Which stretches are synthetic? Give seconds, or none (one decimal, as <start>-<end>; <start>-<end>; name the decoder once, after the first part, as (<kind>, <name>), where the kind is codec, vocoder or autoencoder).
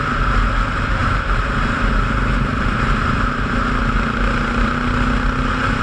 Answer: 1.0-1.9 (vocoder, BigVGAN v2); 2.5-3.8